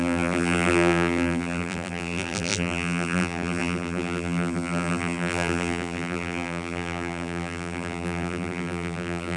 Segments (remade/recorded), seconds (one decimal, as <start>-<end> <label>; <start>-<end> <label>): 0.0-9.4 remade